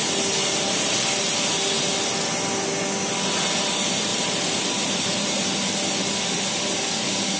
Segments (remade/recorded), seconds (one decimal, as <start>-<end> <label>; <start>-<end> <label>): 0.0-0.4 recorded; 0.4-1.6 remade; 1.6-4.1 recorded; 4.1-5.4 remade; 5.4-7.4 recorded